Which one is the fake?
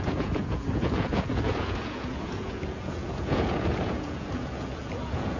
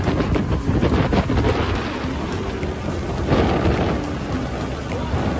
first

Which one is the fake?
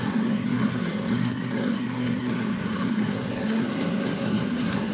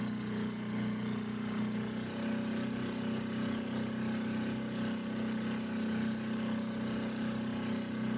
first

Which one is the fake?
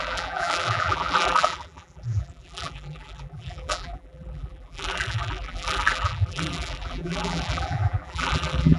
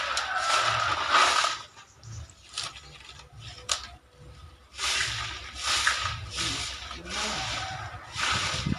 first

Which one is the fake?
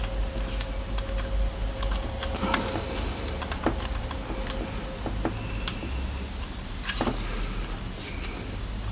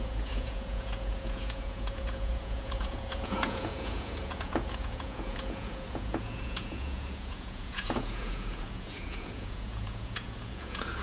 second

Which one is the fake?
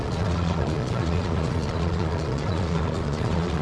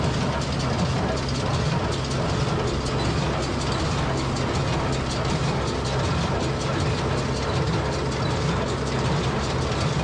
first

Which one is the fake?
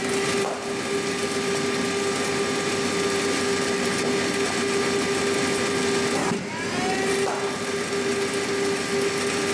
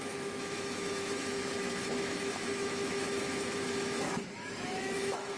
second